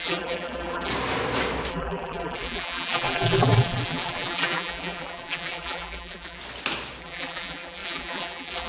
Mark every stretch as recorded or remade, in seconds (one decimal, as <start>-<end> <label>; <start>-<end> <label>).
0.0-0.9 remade; 0.9-1.7 recorded; 1.7-6.4 remade; 6.4-7.0 recorded; 7.0-8.7 remade